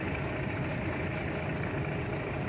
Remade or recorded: recorded